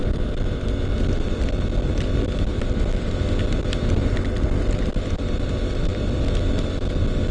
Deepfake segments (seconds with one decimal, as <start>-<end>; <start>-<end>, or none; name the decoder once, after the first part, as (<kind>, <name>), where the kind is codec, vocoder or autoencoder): none